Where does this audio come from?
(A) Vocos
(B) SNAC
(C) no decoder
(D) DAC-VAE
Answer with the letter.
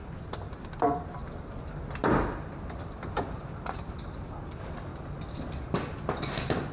C